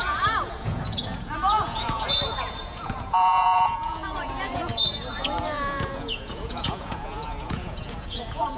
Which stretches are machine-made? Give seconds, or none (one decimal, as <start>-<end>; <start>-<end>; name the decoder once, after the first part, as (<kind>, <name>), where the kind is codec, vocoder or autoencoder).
0.0-8.6 (vocoder, Vocos)